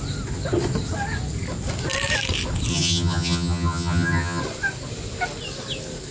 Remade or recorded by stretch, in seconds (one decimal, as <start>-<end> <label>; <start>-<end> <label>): 0.0-2.7 recorded; 2.7-4.4 remade; 4.4-6.1 recorded